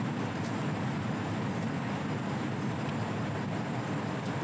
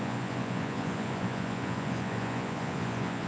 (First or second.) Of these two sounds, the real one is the first